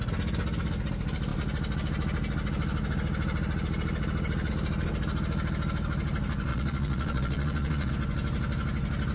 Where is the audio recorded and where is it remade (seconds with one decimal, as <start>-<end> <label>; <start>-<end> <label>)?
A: 0.0-6.5 recorded; 6.5-7.9 remade; 7.9-9.1 recorded